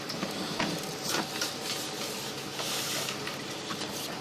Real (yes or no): yes